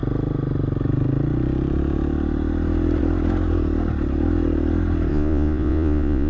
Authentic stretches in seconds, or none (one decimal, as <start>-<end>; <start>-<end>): 0.0-5.1